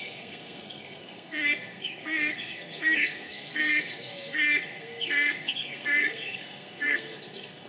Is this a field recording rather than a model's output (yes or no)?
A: no